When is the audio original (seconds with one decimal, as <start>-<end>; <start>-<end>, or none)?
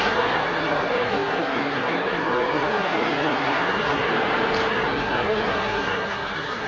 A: 4.1-4.7